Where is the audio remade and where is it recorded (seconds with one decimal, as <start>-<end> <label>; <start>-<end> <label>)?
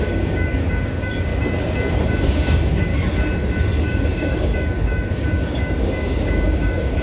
0.0-1.3 remade; 1.3-1.9 recorded; 1.9-2.9 remade; 2.9-3.8 recorded; 3.8-7.0 remade